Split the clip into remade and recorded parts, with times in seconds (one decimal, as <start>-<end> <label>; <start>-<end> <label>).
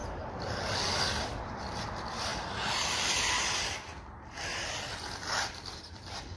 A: 0.0-6.4 recorded